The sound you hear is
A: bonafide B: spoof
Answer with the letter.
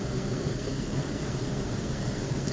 B